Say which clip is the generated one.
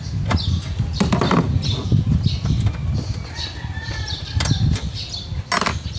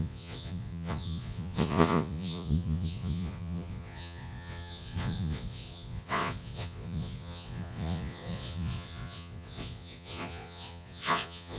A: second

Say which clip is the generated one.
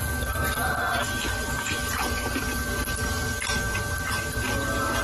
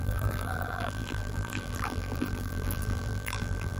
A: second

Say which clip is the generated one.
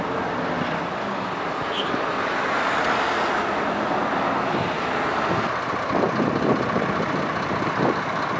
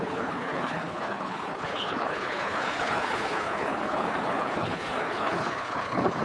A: second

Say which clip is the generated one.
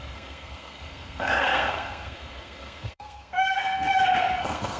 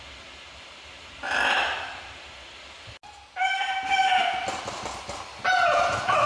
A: first